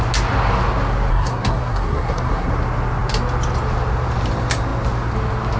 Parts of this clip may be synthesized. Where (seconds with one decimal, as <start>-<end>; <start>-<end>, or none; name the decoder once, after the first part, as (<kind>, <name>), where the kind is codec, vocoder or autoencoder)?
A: 1.1-2.5 (codec, SNAC)